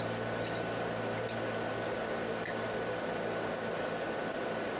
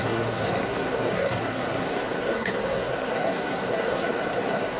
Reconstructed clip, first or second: second